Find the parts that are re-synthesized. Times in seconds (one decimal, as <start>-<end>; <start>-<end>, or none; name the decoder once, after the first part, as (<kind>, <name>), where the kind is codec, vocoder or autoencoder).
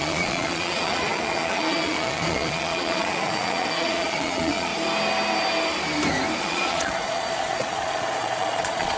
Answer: 0.0-4.7 (vocoder, Vocos); 6.4-9.0